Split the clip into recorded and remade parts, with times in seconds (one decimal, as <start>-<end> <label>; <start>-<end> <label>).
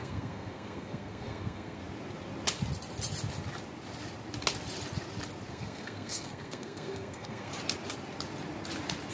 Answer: 0.0-1.8 remade; 1.8-5.5 recorded; 5.5-7.5 remade; 7.5-9.1 recorded